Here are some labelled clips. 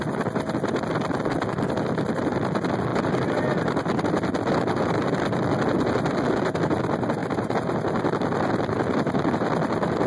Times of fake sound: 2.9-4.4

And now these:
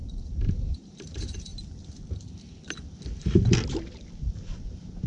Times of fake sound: 0.0-1.5; 4.6-5.1

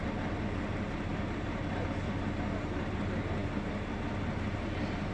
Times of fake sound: none

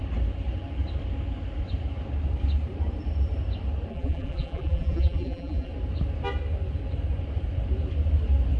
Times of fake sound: 3.9-5.7